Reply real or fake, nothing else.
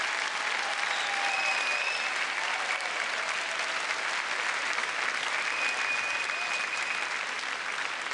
real